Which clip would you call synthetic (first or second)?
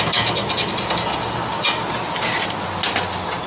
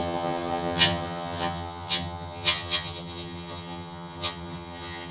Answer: second